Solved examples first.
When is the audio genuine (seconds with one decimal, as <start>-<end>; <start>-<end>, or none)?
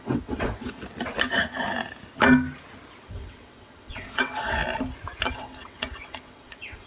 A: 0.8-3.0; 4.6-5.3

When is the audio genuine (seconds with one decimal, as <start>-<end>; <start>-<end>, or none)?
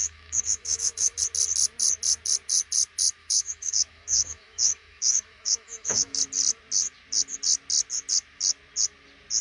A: 1.2-3.2; 6.2-9.4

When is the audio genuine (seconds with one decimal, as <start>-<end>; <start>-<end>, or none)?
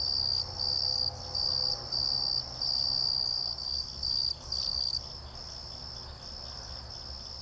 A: 0.0-7.4